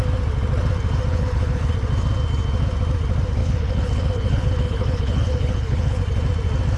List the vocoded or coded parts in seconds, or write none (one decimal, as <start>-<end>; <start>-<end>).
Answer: 1.1-1.7; 3.4-6.0